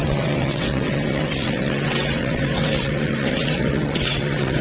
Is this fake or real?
fake